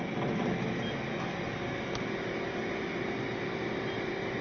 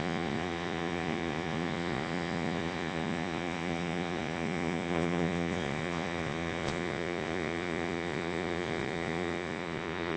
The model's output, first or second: second